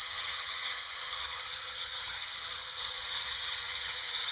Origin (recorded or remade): remade